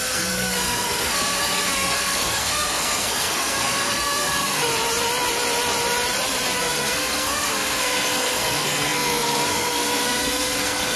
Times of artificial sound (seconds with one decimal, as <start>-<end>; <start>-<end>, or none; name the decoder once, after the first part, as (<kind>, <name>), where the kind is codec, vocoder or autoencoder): 0.0-4.7 (codec, SNAC); 6.6-11.0